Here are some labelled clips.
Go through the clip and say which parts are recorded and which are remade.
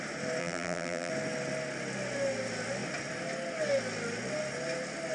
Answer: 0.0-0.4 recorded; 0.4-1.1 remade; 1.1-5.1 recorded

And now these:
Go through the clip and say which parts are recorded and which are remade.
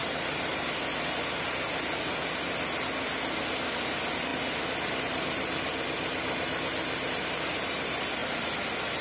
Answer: 0.0-1.0 remade; 1.0-8.2 recorded; 8.2-9.0 remade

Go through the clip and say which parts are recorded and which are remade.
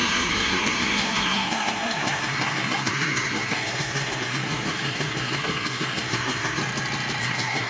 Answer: 0.0-6.6 remade; 6.6-7.2 recorded; 7.2-7.7 remade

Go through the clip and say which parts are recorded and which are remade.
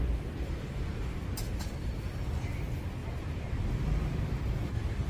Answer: 0.0-0.9 remade; 0.9-1.8 recorded; 1.8-3.0 remade; 3.0-3.7 recorded; 3.7-5.1 remade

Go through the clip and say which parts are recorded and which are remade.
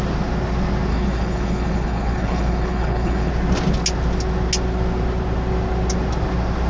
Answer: 0.0-0.9 recorded; 0.9-3.3 remade; 3.3-6.7 recorded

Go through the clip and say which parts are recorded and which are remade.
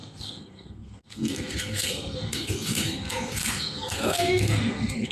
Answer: 0.0-5.1 remade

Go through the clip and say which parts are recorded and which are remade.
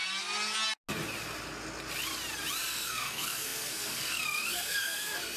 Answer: 0.0-2.7 recorded; 2.7-5.4 remade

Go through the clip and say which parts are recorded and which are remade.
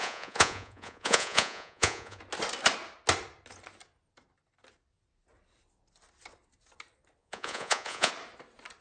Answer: 0.0-2.2 remade; 2.2-7.2 recorded; 7.2-8.1 remade; 8.1-8.8 recorded